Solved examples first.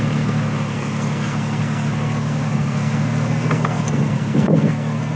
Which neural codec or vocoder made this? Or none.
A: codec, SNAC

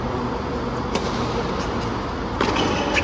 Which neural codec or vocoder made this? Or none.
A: none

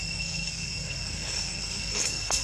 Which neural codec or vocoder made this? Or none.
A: codec, SNAC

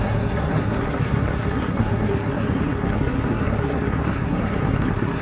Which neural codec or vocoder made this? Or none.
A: codec, SNAC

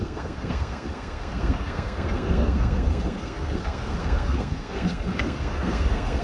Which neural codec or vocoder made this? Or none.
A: codec, SNAC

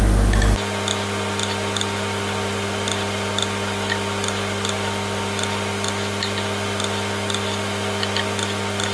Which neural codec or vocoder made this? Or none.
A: none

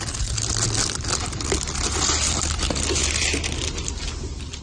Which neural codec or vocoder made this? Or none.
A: none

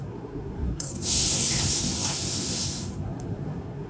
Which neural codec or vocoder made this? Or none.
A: codec, SNAC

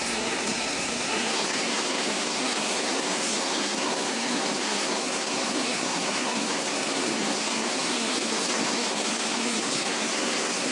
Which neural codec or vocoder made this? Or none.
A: codec, SNAC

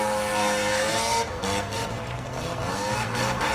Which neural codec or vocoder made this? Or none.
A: codec, SNAC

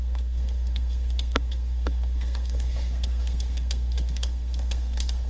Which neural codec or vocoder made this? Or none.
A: codec, SNAC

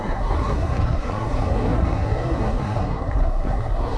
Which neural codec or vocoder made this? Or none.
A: codec, SNAC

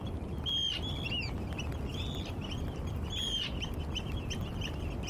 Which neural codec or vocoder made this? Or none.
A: none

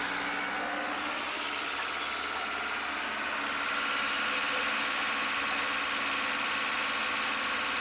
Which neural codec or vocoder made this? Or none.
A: none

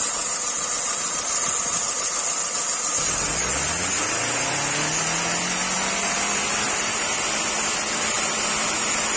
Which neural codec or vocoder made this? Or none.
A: none